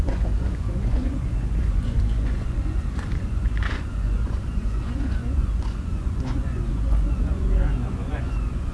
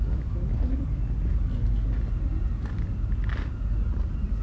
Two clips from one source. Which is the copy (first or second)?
first